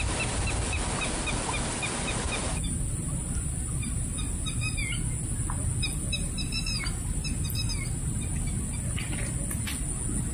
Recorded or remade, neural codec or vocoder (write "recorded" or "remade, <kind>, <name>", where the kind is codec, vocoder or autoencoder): recorded